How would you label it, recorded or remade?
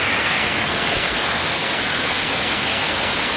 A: remade